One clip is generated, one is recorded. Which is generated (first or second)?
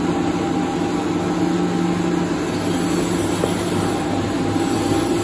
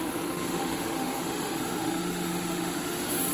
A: second